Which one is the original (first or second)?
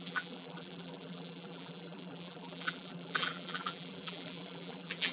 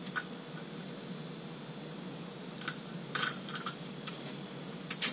second